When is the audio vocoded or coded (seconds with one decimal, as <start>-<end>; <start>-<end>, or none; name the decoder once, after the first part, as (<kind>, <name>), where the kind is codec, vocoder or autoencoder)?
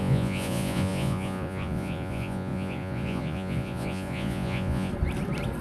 0.0-4.9 (vocoder, Vocos)